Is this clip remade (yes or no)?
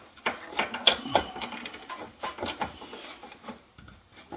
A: no